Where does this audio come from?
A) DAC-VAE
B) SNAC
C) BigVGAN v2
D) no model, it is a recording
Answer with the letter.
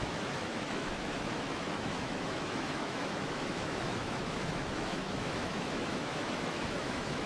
A